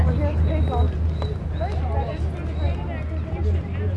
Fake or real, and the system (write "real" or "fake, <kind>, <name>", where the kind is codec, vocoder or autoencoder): real